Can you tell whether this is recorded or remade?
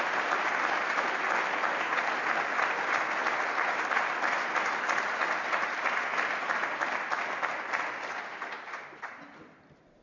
recorded